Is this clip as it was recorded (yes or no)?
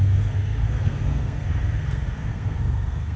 no